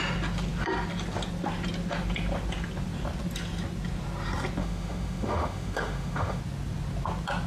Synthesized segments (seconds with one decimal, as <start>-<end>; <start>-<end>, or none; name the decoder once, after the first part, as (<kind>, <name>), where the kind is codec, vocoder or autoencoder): 4.6-6.4 (autoencoder, DAC-VAE)